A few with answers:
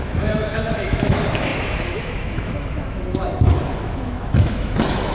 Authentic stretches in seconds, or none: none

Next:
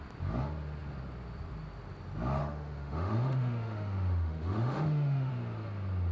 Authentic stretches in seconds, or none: 0.0-2.4; 5.3-6.1

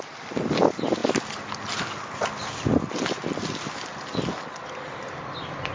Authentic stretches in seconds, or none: 0.0-5.7

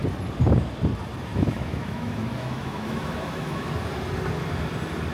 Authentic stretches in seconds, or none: 0.0-1.3; 3.7-5.1

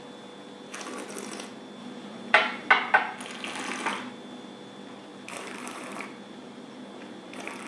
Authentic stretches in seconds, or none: 0.0-1.8; 2.7-5.1; 7.3-7.7